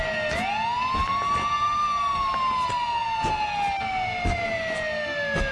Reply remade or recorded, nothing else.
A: recorded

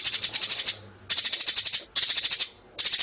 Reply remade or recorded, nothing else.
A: recorded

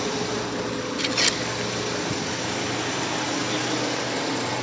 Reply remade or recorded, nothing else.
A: recorded